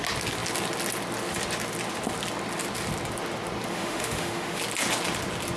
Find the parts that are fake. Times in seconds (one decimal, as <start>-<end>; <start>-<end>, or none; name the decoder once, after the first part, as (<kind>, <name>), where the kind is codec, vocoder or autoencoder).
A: 3.7-4.6 (autoencoder, DAC-VAE)